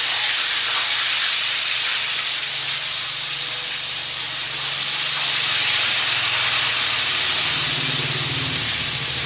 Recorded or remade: recorded